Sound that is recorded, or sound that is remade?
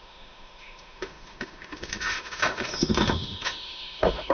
remade